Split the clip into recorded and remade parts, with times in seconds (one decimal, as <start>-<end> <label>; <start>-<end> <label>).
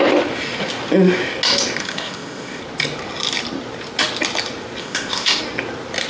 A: 0.0-1.8 recorded; 1.8-2.6 remade; 2.6-4.8 recorded; 4.8-5.4 remade; 5.4-6.1 recorded